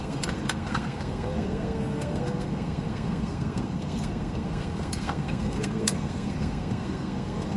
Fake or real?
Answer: fake